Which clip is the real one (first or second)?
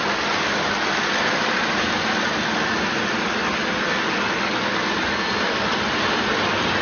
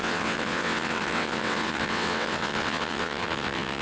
first